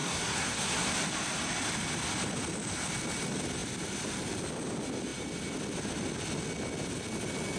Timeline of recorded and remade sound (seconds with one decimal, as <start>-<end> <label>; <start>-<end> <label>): 0.0-0.9 remade; 0.9-7.6 recorded